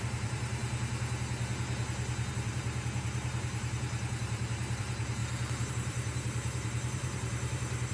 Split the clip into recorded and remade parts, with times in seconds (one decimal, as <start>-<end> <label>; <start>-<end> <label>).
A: 0.0-0.6 remade; 0.6-2.3 recorded; 2.3-5.2 remade; 5.2-5.7 recorded; 5.7-7.9 remade